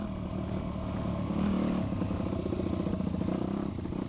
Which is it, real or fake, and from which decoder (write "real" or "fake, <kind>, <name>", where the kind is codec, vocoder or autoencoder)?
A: real